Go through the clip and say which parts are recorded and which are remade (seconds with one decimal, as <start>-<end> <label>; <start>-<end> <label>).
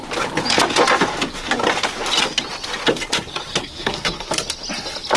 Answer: 0.0-3.6 recorded; 3.6-4.3 remade; 4.3-5.2 recorded